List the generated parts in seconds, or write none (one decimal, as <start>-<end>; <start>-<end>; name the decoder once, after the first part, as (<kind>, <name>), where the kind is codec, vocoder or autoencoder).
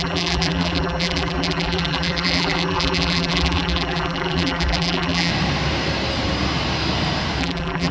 0.0-5.3 (vocoder, BigVGAN v2); 7.4-7.9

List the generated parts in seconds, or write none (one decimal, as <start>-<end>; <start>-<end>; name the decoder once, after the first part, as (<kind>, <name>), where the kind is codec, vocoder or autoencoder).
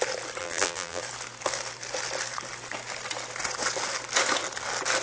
0.4-1.0 (vocoder, BigVGAN v2)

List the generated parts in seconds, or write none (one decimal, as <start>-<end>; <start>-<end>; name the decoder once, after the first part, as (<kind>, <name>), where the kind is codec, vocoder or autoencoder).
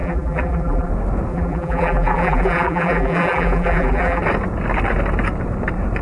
0.0-0.9 (vocoder, BigVGAN v2); 1.3-4.2